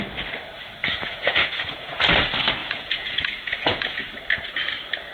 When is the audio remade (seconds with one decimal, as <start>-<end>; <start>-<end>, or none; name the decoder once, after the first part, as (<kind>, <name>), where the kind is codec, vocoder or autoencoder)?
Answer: 0.8-2.0 (vocoder, Vocos); 2.6-4.0